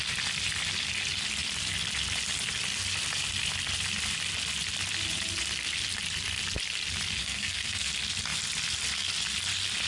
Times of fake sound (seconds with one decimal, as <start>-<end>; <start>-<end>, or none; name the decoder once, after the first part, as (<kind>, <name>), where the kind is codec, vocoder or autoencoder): 7.2-7.9 (codec, SNAC)